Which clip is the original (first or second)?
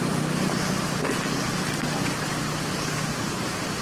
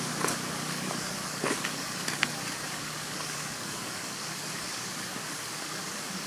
first